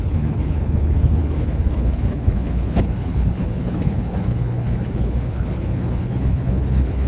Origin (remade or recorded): remade